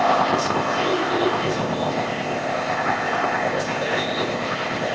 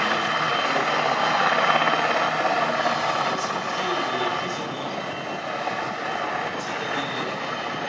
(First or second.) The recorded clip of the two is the second